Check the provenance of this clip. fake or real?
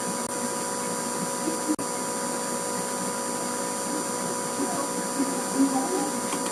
real